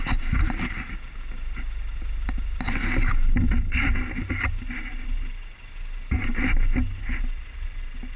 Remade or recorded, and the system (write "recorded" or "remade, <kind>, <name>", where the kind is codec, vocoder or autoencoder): recorded